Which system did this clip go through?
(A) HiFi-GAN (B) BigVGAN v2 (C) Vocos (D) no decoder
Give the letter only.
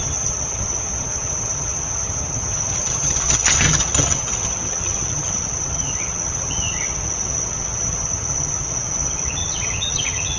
A